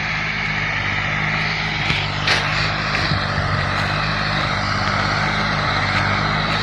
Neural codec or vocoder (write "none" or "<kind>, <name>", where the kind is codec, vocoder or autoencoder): none